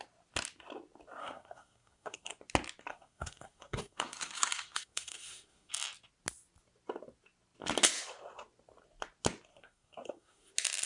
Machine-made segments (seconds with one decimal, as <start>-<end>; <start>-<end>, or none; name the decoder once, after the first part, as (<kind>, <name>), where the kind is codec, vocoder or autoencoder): 1.2-2.3 (codec, SNAC); 2.9-5.7; 9.5-10.5